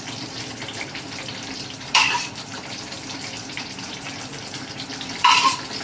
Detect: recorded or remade remade